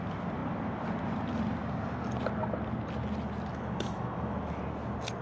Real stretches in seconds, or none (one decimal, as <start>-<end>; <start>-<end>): 0.0-3.5; 4.6-5.2